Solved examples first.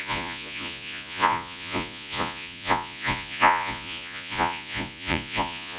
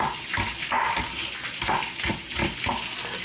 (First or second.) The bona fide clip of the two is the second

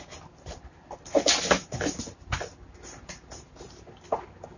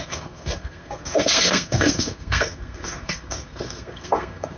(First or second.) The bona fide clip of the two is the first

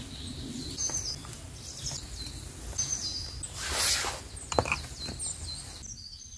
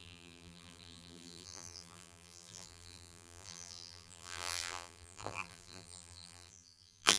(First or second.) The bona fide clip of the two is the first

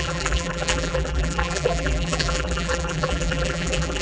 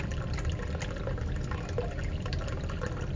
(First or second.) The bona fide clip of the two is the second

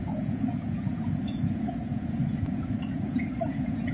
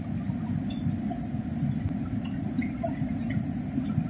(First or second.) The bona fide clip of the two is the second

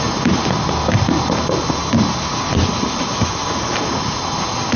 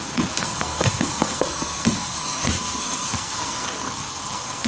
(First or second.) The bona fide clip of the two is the first